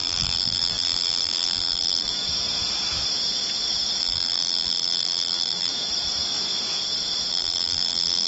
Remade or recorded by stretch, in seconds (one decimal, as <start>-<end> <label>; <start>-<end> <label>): 0.0-2.1 remade; 2.1-4.0 recorded; 4.0-5.7 remade; 5.7-7.3 recorded; 7.3-8.3 remade